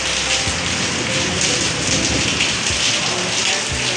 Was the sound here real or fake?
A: real